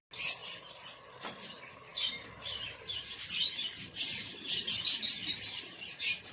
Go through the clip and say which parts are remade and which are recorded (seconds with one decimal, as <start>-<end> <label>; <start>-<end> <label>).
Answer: 0.0-6.3 recorded